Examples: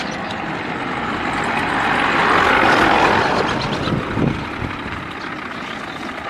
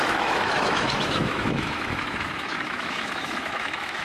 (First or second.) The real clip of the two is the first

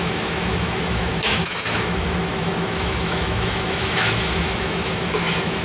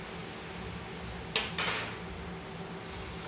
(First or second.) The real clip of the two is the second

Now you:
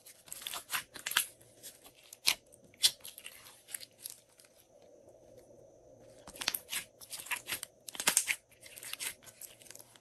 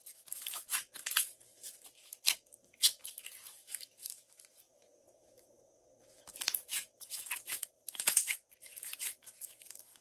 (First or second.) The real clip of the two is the first